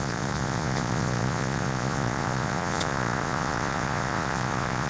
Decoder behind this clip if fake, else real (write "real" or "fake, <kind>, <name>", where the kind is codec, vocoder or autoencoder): fake, vocoder, Vocos